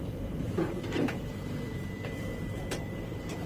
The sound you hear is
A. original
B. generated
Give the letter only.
B